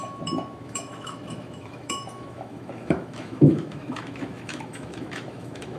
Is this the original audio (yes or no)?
no